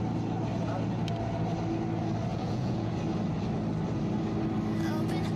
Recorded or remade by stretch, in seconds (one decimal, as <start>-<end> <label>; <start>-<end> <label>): 0.0-2.3 recorded; 2.3-2.9 remade; 2.9-5.4 recorded